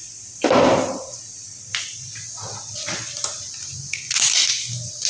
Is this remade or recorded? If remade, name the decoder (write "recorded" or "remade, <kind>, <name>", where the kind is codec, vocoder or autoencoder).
recorded